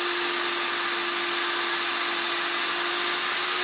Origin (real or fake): real